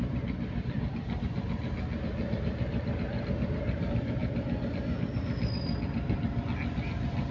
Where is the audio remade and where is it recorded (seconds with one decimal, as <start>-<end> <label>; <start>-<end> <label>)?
0.0-7.3 recorded